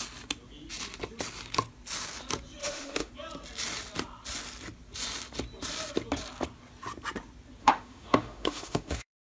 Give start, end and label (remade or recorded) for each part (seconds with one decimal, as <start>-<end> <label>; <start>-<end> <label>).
0.0-2.6 recorded; 2.6-3.1 remade; 3.1-7.6 recorded; 7.6-9.2 remade